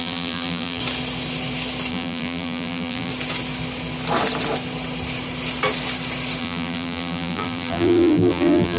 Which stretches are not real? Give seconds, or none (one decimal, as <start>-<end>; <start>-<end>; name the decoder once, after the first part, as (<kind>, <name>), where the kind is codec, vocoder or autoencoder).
0.0-0.8 (vocoder, BigVGAN v2); 1.9-3.1; 6.4-8.8